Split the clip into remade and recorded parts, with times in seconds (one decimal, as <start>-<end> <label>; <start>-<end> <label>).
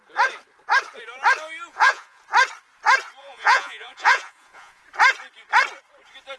0.0-1.7 recorded; 1.7-2.2 remade; 2.2-3.2 recorded; 3.2-4.8 remade; 4.8-6.4 recorded